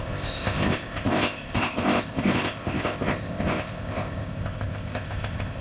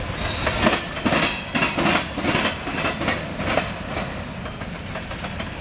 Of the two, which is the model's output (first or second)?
first